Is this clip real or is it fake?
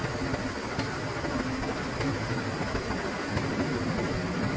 real